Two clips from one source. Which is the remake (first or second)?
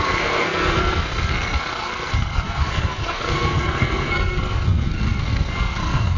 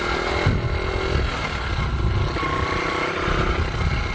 first